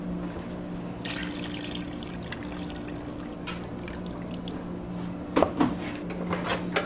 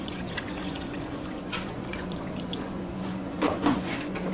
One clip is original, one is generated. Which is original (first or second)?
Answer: first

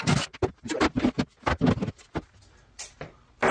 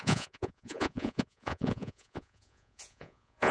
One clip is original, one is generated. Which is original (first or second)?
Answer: first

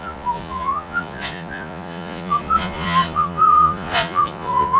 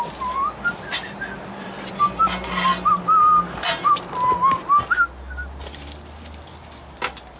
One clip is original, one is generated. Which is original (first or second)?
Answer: second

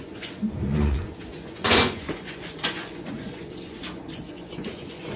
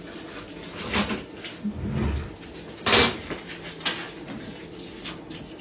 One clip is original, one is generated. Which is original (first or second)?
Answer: second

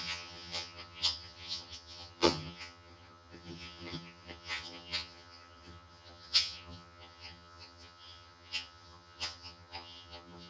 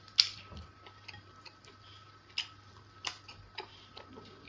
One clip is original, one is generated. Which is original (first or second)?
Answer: second